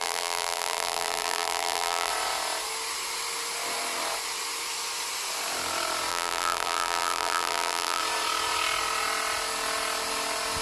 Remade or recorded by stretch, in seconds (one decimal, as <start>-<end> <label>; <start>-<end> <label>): 0.0-2.1 remade; 2.1-6.1 recorded; 6.1-8.0 remade; 8.0-10.6 recorded